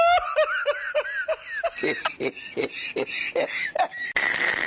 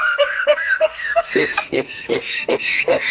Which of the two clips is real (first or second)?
first